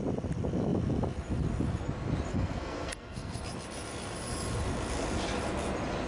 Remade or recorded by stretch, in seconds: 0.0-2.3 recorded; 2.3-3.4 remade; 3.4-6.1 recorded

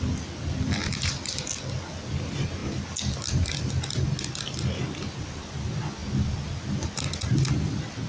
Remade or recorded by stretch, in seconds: 0.0-8.1 recorded